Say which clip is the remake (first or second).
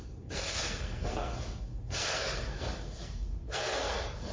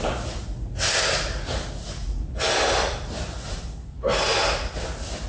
first